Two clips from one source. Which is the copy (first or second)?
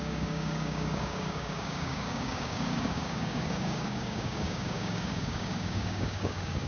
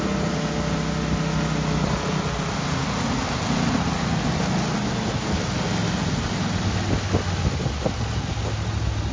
first